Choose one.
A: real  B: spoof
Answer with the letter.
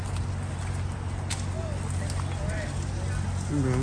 A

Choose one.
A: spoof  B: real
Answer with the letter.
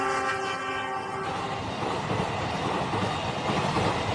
B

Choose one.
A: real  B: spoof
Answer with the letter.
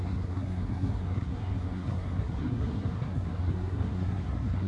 B